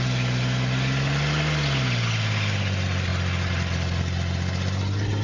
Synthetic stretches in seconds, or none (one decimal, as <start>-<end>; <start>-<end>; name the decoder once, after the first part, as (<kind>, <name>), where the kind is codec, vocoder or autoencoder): none